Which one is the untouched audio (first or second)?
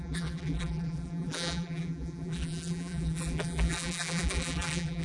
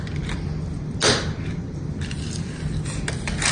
second